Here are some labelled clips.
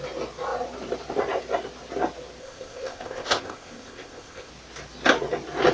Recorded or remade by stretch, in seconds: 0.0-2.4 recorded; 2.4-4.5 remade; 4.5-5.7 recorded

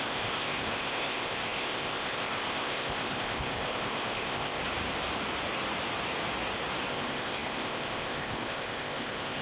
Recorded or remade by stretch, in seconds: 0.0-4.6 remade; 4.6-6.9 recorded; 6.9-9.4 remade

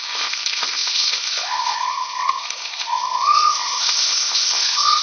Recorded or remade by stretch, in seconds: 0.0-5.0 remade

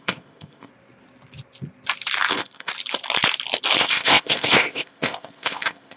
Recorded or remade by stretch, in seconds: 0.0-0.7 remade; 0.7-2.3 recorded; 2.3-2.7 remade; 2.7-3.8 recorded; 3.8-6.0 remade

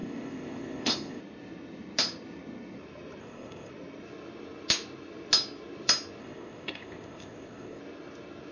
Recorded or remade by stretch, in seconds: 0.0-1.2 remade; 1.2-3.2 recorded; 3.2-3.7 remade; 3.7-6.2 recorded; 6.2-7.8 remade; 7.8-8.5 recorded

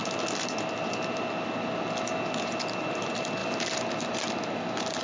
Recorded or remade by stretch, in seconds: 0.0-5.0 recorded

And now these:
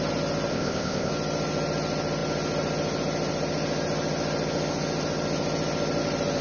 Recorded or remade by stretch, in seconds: 0.0-0.5 recorded; 0.5-1.1 remade; 1.1-6.4 recorded